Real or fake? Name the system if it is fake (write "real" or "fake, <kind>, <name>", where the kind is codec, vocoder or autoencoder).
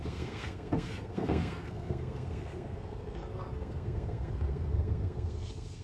fake, codec, SNAC